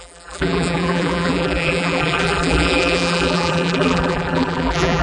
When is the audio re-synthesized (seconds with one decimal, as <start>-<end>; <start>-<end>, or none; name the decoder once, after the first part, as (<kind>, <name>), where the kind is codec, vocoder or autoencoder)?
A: 0.0-5.0 (vocoder, BigVGAN v2)